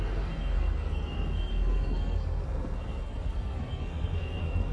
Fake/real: fake